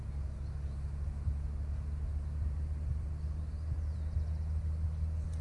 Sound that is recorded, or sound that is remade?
recorded